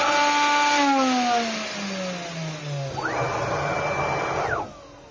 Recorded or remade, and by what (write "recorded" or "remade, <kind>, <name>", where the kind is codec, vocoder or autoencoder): recorded